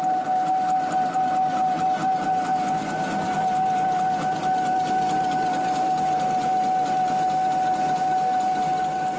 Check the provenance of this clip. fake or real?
real